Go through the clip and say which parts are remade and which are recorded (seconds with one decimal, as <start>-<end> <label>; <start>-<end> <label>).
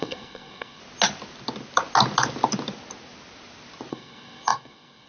0.0-0.8 remade; 0.8-3.9 recorded; 3.9-5.1 remade